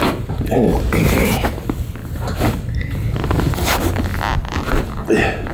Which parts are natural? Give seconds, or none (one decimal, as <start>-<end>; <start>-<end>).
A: 0.0-5.5